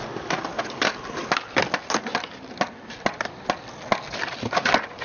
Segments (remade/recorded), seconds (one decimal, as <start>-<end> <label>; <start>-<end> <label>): 0.0-5.0 recorded